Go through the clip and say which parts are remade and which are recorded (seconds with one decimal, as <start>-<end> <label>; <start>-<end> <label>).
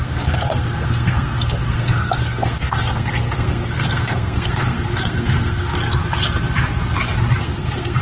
0.0-5.8 remade; 5.8-7.4 recorded; 7.4-8.0 remade